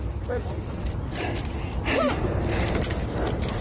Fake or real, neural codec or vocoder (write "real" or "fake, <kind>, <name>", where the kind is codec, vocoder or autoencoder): real